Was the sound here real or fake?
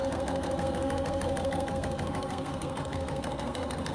fake